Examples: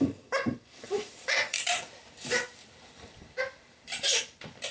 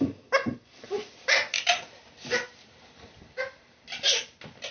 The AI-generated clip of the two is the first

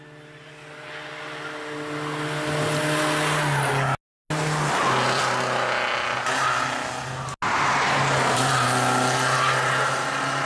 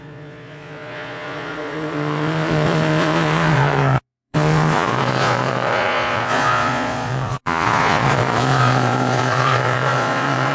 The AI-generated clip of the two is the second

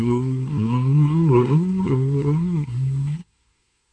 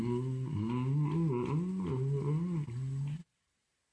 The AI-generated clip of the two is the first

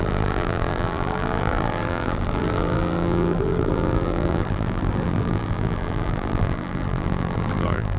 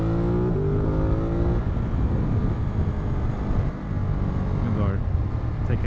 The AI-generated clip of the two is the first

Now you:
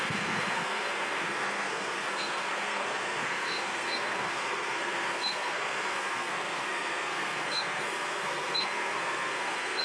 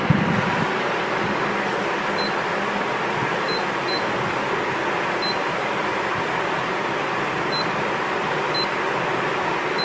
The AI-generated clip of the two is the first